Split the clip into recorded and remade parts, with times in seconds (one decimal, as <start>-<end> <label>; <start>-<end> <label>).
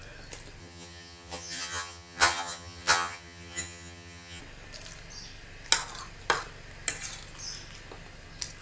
0.0-0.6 recorded; 0.6-4.4 remade; 4.4-8.6 recorded